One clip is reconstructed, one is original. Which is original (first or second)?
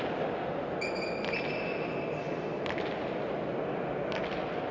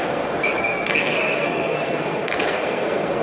first